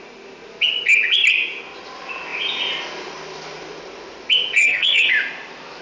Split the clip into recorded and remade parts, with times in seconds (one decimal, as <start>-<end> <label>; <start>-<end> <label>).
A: 0.0-4.6 recorded; 4.6-5.1 remade; 5.1-5.8 recorded